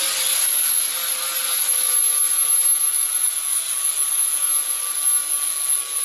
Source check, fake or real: real